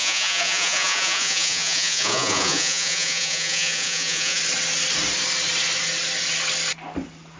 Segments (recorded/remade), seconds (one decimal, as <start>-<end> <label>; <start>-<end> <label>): 0.0-4.4 remade; 4.4-7.4 recorded